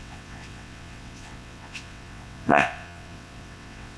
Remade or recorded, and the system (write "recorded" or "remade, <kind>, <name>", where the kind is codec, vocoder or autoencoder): remade, vocoder, WaveNeXt